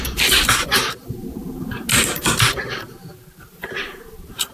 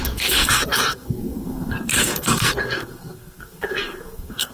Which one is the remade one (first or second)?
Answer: second